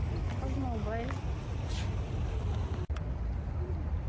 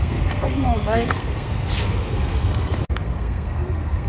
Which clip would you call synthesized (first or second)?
second